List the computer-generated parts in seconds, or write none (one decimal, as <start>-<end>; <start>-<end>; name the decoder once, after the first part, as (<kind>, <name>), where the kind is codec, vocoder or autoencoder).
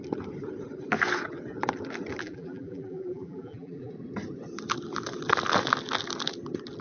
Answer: 2.2-3.9 (vocoder, BigVGAN v2)